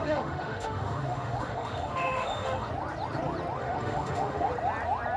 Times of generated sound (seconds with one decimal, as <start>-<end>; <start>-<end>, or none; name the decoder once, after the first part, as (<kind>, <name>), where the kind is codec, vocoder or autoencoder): 0.0-2.7 (autoencoder, DAC-VAE); 3.6-4.5